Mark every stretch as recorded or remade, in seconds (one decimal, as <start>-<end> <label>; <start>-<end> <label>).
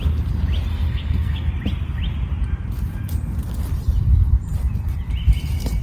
0.0-0.7 recorded; 0.7-1.5 remade; 1.5-5.8 recorded